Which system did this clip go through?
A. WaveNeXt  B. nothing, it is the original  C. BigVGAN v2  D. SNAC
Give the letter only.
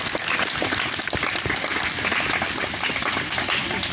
B